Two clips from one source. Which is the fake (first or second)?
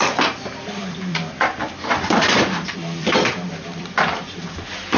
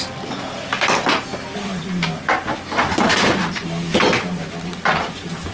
first